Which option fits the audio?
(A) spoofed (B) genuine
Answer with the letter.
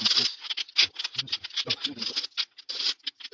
B